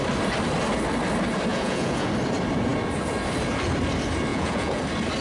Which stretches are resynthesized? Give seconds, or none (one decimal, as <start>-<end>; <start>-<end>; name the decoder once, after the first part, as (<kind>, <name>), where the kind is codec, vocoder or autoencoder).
1.5-2.1 (vocoder, Vocos); 4.3-4.8